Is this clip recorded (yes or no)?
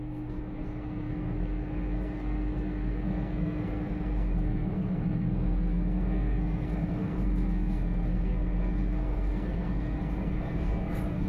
no